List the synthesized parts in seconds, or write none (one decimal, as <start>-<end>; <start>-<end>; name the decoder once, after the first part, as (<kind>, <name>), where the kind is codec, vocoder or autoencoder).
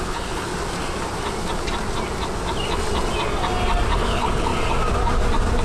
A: 0.0-0.5 (codec, HILCodec); 3.9-4.5